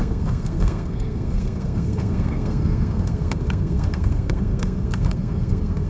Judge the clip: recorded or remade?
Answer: remade